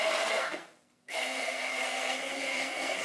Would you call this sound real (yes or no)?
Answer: no